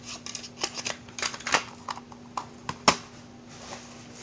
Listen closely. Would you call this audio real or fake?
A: real